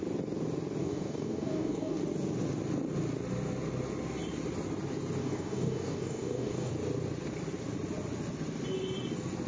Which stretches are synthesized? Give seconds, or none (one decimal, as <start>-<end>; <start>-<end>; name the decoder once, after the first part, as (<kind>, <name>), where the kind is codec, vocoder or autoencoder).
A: 0.8-2.0 (codec, DAC); 5.2-6.7